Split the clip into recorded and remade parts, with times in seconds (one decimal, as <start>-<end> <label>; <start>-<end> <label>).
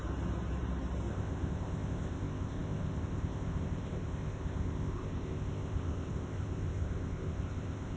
0.0-1.1 recorded; 1.1-8.0 remade